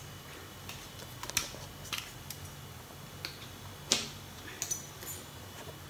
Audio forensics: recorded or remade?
recorded